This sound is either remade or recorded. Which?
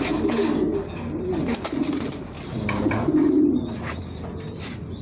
recorded